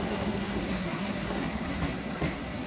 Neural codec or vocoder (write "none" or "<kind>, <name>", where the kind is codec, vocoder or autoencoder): codec, SNAC